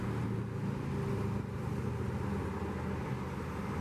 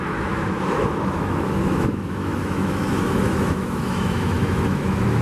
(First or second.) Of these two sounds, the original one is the first